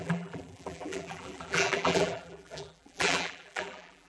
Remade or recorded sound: remade